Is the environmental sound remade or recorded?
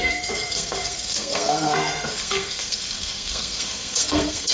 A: remade